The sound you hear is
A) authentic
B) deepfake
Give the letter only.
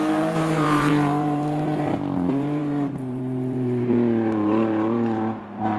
B